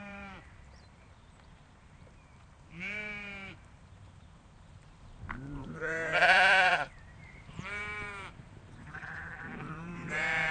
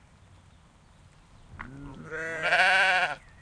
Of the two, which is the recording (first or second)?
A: second